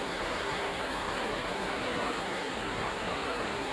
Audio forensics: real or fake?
fake